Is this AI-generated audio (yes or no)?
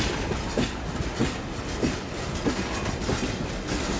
no